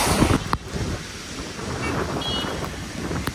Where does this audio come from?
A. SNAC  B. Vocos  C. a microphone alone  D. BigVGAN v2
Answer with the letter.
C